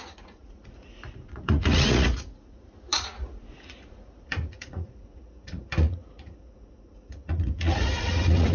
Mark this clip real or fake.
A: fake